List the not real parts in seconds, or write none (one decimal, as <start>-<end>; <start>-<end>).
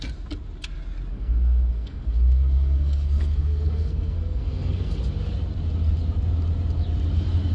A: 1.1-5.0